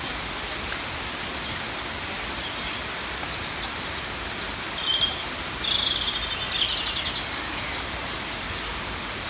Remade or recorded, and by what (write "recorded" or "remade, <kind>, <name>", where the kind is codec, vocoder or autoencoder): recorded